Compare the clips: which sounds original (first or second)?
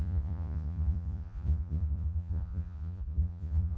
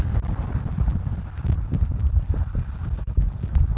second